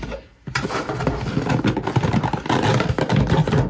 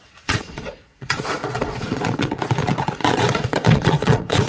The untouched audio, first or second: first